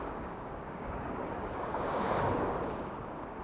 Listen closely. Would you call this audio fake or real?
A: fake